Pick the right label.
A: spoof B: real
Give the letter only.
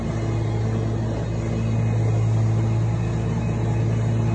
B